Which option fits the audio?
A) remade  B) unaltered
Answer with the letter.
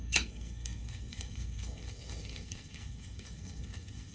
A